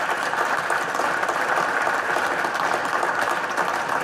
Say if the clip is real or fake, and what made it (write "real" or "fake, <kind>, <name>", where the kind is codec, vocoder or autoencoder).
real